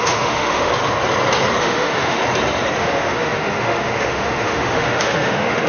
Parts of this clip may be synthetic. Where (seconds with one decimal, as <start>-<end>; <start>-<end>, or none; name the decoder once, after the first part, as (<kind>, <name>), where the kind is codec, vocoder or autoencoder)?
0.0-0.7 (autoencoder, DAC-VAE); 1.6-2.2; 2.8-5.7